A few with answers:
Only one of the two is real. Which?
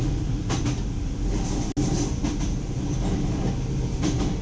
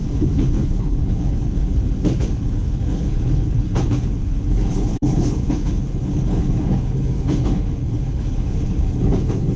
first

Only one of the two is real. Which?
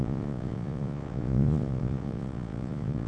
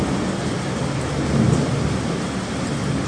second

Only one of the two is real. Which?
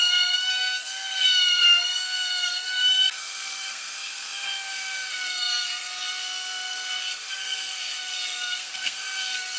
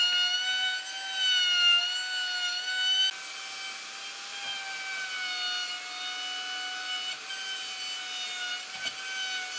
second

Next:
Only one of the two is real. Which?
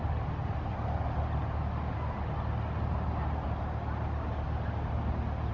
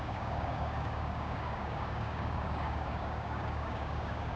first